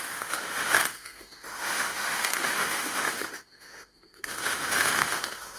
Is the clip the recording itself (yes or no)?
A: no